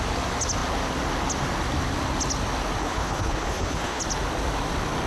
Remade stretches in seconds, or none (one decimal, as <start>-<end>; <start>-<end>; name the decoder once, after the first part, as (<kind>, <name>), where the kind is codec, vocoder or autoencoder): 2.8-4.0 (codec, HILCodec)